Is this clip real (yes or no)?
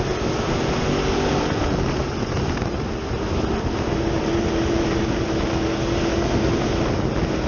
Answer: yes